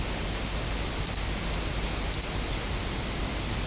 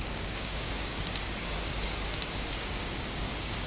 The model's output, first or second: second